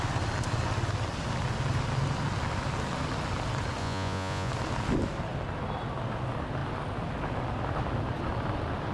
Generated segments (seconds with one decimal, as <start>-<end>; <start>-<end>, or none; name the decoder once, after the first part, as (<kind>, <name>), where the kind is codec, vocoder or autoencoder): 3.8-4.5 (vocoder, Vocos)